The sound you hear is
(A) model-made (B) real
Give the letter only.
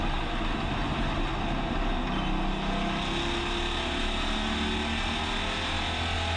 B